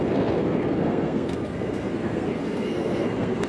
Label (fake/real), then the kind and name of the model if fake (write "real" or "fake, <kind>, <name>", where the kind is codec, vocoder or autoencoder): fake, codec, SNAC